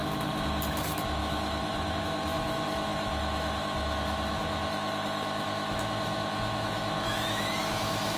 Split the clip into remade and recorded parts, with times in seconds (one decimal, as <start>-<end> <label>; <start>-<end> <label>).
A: 0.0-0.7 recorded; 0.7-8.2 remade